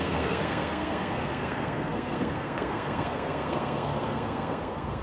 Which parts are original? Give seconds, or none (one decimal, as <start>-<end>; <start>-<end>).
none